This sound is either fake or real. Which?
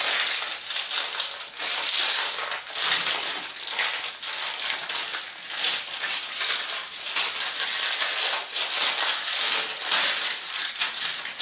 real